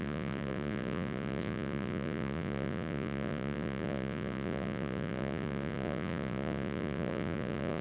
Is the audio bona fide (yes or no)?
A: no